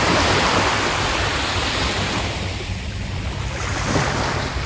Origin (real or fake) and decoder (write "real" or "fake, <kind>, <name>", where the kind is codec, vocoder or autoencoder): fake, vocoder, BigVGAN v2